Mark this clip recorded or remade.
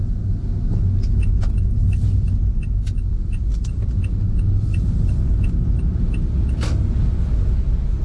recorded